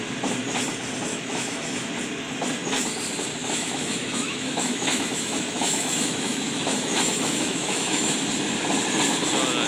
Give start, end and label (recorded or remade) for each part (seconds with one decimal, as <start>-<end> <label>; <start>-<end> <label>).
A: 0.0-1.1 recorded; 1.1-1.9 remade; 1.9-3.4 recorded; 3.4-8.1 remade; 8.1-9.7 recorded